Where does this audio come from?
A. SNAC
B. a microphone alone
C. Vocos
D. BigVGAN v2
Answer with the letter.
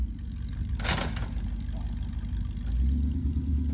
B